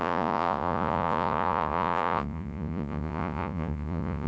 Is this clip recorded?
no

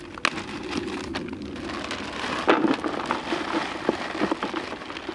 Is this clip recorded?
yes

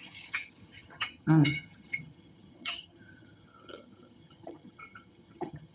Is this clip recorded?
no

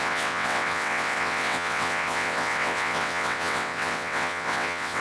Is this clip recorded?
no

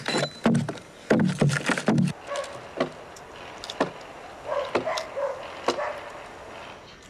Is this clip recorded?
yes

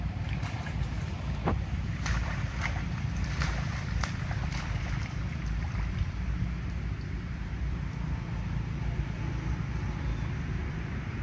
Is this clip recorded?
no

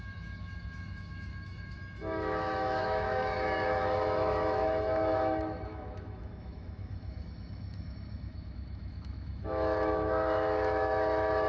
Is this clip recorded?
no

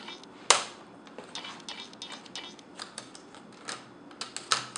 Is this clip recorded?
yes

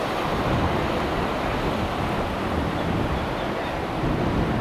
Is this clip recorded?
yes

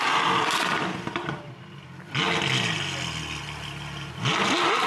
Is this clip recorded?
yes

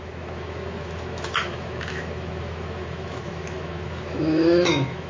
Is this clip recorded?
no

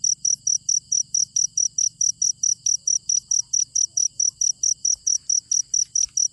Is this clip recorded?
yes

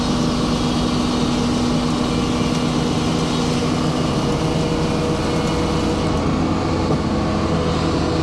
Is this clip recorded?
yes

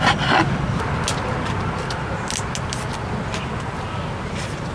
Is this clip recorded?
yes